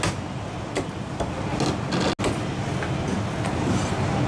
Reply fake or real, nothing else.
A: real